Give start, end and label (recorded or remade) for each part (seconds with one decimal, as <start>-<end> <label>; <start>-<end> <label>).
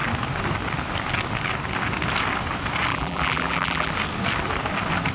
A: 0.0-2.9 recorded; 2.9-3.9 remade; 3.9-5.1 recorded